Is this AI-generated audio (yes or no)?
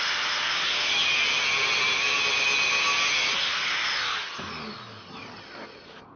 no